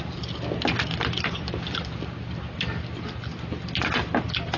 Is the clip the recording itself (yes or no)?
yes